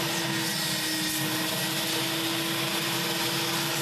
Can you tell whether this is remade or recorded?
recorded